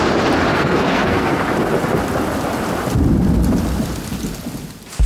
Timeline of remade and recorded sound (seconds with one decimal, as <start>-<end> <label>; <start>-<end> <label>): 0.0-0.5 recorded; 0.5-1.4 remade; 1.4-5.1 recorded